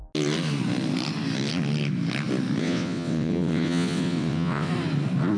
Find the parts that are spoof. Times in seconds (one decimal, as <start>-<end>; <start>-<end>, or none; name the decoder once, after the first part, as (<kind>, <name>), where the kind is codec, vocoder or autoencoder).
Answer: 2.6-4.7 (vocoder, WaveNeXt)